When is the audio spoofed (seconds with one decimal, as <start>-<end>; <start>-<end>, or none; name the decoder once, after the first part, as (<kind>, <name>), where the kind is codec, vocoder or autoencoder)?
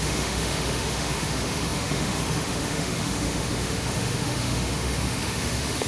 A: 0.0-5.9 (autoencoder, DAC-VAE)